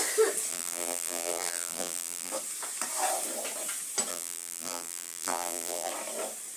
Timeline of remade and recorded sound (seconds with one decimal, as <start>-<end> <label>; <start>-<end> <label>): 0.0-0.5 recorded; 0.5-2.3 remade; 2.3-4.1 recorded; 4.1-5.9 remade; 5.9-6.6 recorded